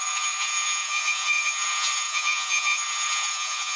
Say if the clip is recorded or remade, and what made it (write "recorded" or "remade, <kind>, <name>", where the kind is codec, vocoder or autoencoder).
remade, vocoder, Vocos